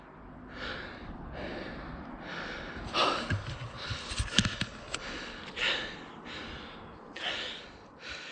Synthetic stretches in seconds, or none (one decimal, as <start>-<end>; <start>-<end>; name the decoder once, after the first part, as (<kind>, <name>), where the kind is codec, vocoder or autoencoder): none